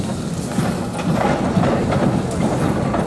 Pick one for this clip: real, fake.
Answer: real